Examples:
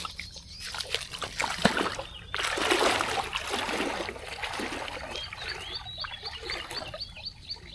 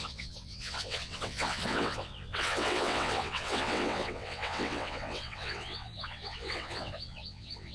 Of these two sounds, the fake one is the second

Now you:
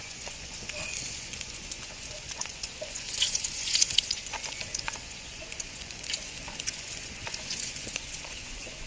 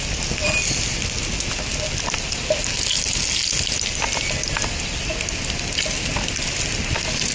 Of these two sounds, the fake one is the first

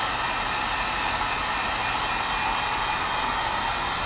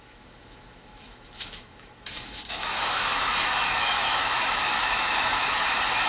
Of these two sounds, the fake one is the second